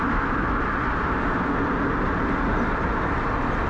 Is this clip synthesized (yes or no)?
no